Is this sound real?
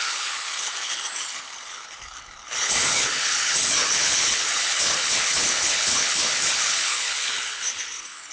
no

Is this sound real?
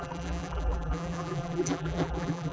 no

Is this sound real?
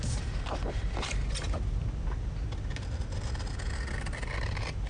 yes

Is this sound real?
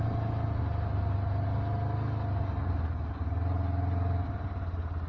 yes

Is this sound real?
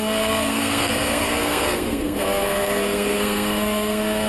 no